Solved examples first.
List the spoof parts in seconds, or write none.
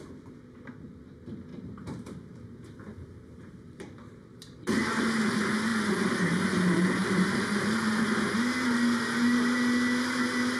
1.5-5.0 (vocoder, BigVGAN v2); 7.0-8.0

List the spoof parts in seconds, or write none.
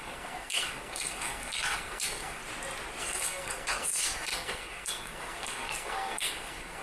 0.0-2.4 (codec, SNAC); 3.0-6.8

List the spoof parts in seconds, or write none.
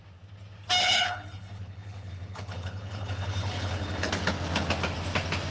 0.8-4.1 (codec, HILCodec)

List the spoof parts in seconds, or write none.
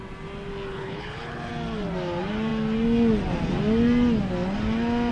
0.7-1.5 (codec, HILCodec)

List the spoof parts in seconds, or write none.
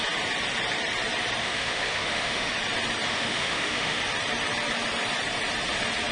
1.4-2.5 (autoencoder, DAC-VAE); 3.1-4.0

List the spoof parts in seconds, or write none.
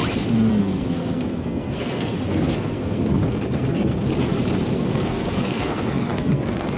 0.5-4.1 (codec, SNAC); 4.7-6.8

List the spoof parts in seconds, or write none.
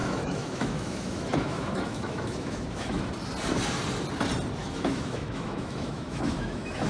0.0-3.1 (autoencoder, DAC-VAE); 4.6-6.9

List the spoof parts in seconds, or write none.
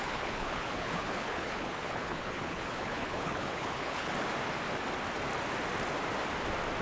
0.0-4.1 (codec, HILCodec)